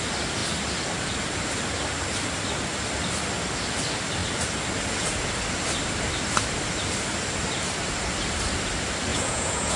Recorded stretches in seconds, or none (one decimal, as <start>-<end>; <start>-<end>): 0.0-9.1